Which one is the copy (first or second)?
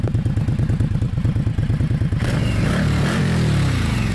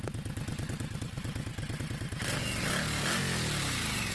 first